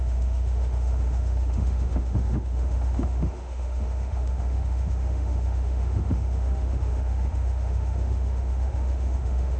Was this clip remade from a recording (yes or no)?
yes